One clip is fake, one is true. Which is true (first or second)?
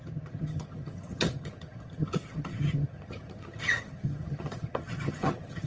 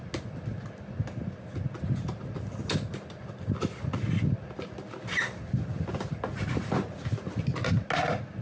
second